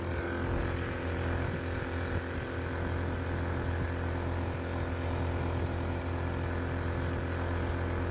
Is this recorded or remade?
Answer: recorded